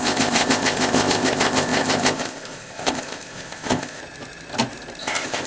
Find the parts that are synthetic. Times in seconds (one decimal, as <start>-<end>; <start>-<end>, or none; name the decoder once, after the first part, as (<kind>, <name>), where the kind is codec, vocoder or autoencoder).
0.0-4.0 (codec, ZipCodec); 5.0-5.5